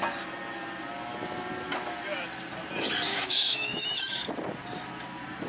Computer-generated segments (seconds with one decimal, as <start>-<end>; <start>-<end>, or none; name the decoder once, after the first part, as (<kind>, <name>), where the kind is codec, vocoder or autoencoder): 3.1-4.3 (autoencoder, DAC-VAE)